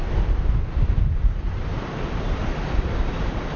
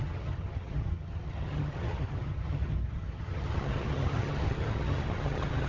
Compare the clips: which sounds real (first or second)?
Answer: first